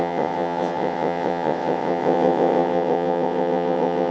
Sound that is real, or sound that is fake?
fake